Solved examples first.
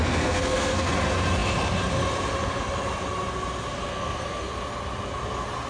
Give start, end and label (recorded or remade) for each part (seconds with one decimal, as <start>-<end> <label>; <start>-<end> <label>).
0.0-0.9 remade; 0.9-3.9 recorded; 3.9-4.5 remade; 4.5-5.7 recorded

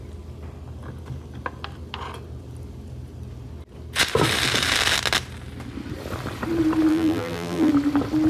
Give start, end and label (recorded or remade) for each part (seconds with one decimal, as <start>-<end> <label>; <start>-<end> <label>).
0.0-6.9 recorded; 6.9-7.7 remade; 7.7-8.3 recorded

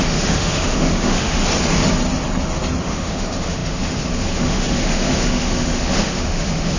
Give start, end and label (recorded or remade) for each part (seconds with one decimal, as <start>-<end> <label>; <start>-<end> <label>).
0.0-1.4 remade; 1.4-2.8 recorded; 2.8-6.8 remade

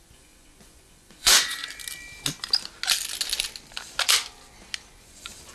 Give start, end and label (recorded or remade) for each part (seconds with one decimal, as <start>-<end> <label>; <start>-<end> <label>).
0.0-1.6 remade; 1.6-4.9 recorded; 4.9-5.5 remade